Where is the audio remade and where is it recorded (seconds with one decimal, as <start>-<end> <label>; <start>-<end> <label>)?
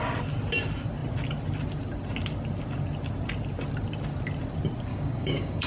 0.0-4.9 recorded; 4.9-5.7 remade